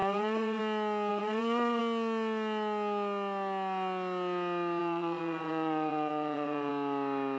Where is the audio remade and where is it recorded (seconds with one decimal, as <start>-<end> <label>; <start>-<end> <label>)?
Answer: 0.0-0.6 remade; 0.6-1.1 recorded; 1.1-1.8 remade; 1.8-4.8 recorded; 4.8-6.7 remade; 6.7-7.4 recorded